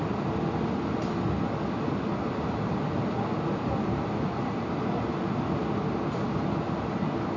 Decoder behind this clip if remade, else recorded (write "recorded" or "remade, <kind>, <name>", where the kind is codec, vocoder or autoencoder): recorded